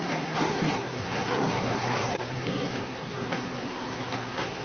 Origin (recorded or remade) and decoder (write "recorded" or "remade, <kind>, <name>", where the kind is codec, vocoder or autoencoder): remade, codec, SNAC